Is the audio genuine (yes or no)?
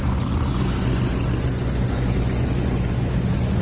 no